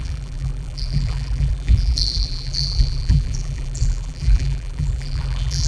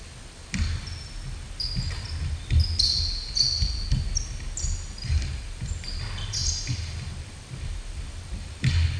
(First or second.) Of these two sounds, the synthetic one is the first